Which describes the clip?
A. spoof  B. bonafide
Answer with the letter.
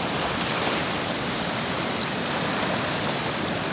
A